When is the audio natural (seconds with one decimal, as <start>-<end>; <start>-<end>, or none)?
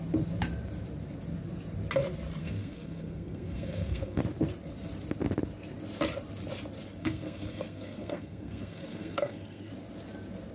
0.0-2.4; 4.2-7.0; 9.7-10.5